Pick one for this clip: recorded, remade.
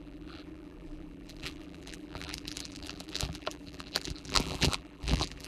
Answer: remade